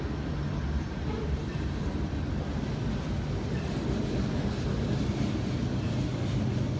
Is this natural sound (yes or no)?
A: yes